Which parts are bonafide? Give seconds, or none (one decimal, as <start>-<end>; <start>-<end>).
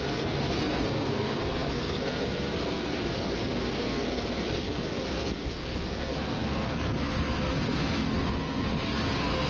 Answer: none